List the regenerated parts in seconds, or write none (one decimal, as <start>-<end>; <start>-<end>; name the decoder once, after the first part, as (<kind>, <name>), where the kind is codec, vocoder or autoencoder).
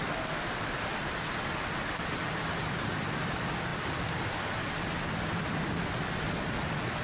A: 0.0-0.9 (vocoder, BigVGAN v2); 2.1-7.0